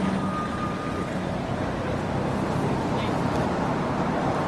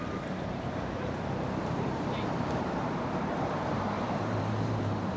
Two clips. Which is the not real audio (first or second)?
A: second